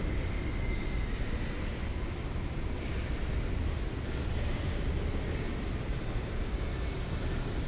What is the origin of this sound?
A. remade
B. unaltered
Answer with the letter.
B